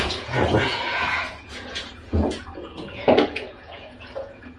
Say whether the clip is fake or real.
fake